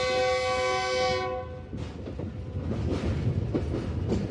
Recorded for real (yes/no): yes